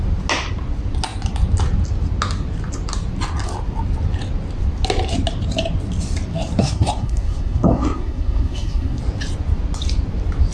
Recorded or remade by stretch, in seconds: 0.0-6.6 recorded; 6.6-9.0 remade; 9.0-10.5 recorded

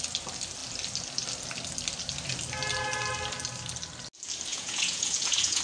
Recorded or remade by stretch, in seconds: 0.0-4.5 recorded; 4.5-5.6 remade

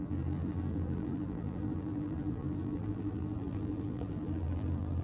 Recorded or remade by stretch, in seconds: 0.0-5.0 remade

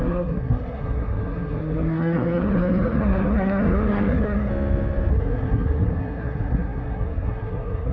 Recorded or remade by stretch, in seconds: 0.0-4.5 remade; 4.5-5.1 recorded; 5.1-7.9 remade